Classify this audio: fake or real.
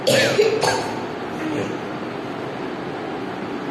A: real